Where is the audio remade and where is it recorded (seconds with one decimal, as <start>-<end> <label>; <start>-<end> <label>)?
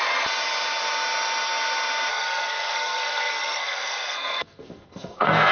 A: 0.0-2.1 recorded; 2.1-5.5 remade